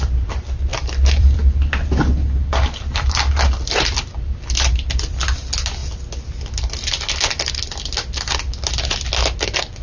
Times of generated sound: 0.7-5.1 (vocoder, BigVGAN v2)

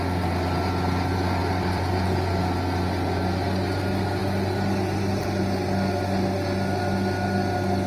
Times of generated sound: 1.4-1.9 (vocoder, BigVGAN v2); 4.2-5.2

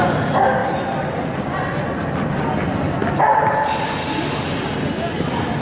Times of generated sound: none

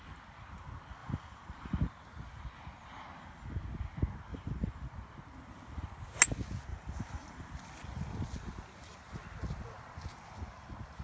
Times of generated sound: 1.0-1.9 (vocoder, BigVGAN v2); 4.3-4.9; 6.7-7.5

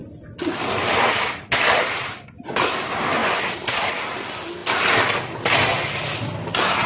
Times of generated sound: 3.2-4.0 (vocoder, BigVGAN v2)